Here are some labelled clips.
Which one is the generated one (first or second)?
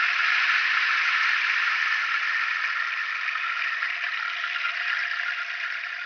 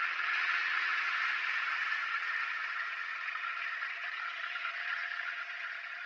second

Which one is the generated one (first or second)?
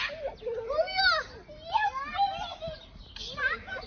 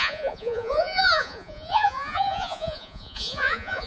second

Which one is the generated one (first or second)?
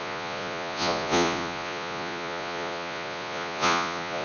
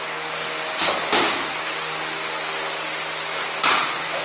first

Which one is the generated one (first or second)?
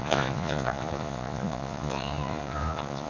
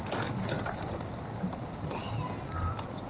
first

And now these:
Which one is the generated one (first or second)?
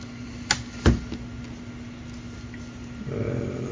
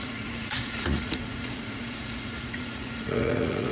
second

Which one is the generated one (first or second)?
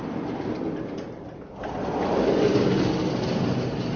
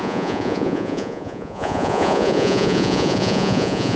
second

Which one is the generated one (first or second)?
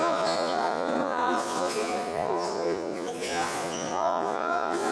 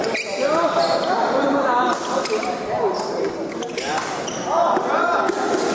first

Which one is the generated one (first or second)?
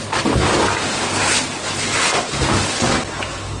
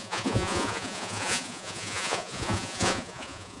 second